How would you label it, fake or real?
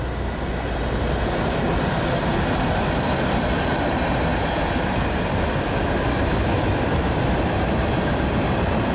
real